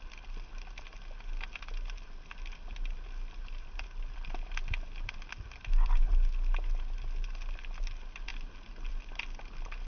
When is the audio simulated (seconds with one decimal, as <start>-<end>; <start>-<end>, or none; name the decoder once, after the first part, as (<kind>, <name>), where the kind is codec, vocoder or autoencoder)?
none